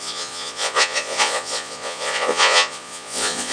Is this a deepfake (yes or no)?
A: yes